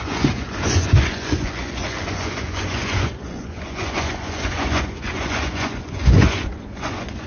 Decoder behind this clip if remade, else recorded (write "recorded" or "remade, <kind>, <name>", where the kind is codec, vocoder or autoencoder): remade, vocoder, Vocos